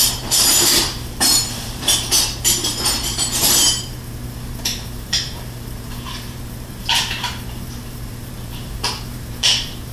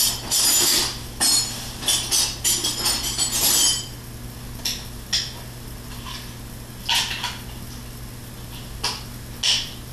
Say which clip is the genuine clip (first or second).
second